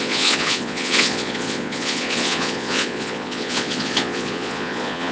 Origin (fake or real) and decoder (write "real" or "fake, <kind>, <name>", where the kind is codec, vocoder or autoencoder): fake, vocoder, Vocos